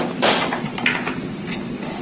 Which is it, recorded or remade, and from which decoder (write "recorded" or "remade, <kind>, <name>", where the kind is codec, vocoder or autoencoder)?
recorded